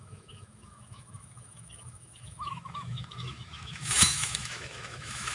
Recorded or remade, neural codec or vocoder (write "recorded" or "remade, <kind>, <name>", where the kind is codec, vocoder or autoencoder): remade, autoencoder, DAC-VAE